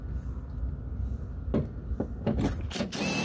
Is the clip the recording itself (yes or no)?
yes